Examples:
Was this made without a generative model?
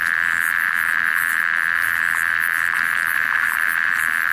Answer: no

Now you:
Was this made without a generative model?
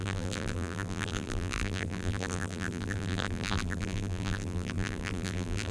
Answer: no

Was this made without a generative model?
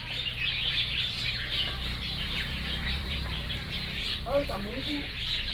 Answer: no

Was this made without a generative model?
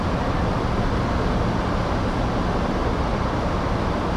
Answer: yes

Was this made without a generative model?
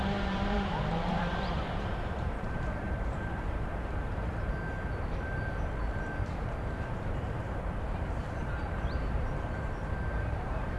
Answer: no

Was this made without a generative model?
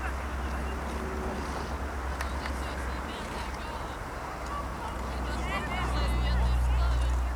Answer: yes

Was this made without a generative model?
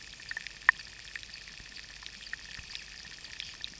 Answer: no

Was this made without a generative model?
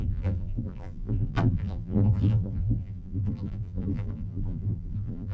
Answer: no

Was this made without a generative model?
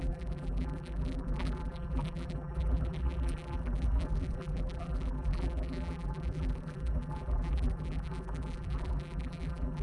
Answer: no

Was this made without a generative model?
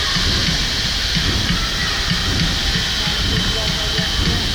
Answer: yes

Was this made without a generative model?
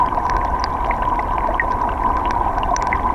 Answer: yes